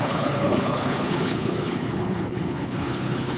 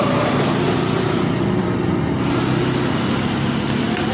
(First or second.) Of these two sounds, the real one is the second